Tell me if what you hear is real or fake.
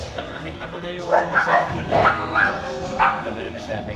fake